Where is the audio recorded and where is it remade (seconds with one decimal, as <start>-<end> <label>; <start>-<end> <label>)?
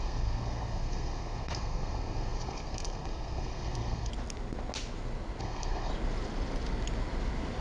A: 0.0-4.1 remade; 4.1-5.4 recorded; 5.4-5.9 remade; 5.9-7.6 recorded